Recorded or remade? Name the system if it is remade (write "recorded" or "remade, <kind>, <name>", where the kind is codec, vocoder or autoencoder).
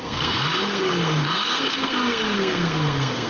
remade, codec, SNAC